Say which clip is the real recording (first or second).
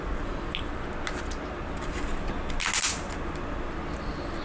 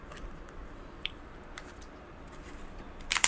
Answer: first